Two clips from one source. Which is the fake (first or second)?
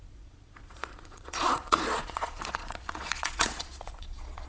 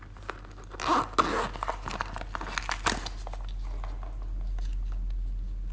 first